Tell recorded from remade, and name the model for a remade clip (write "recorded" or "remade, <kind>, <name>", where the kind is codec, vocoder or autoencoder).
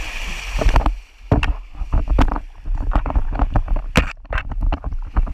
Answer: recorded